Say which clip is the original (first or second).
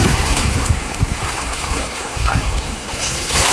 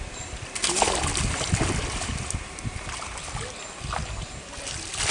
second